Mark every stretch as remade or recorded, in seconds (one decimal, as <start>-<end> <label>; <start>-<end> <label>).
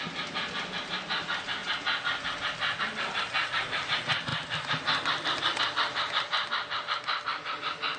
0.0-8.0 recorded